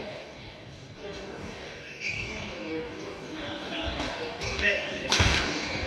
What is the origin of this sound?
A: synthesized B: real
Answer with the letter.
A